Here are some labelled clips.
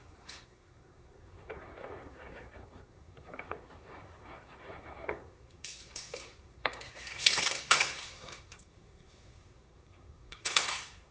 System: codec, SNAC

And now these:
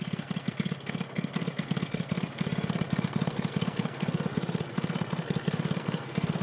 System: codec, SNAC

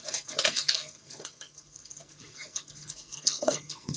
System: codec, SNAC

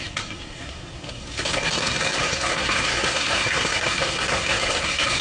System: codec, SNAC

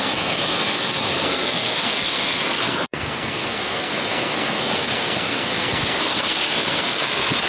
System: codec, SNAC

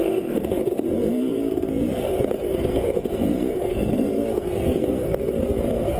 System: codec, SNAC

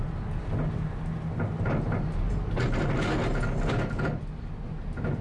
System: none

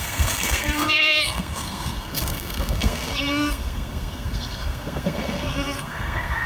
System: codec, SNAC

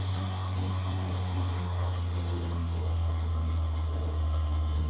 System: codec, SNAC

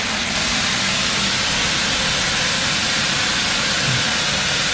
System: none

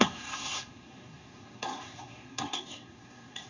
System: codec, SNAC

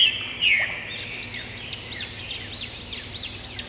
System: none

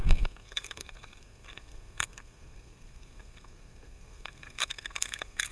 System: codec, SNAC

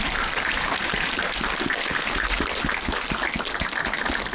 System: none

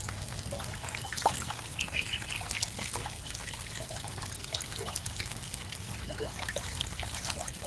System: codec, SNAC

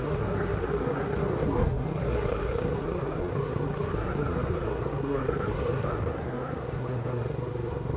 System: codec, SNAC